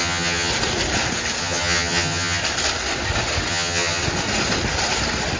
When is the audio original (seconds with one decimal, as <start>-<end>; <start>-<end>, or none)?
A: 0.5-1.4; 2.4-3.5; 4.0-5.4